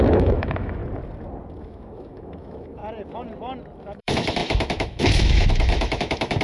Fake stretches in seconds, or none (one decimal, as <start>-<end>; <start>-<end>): 0.0-0.8; 1.6-2.8; 3.8-6.4